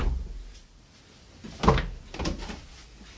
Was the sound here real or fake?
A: real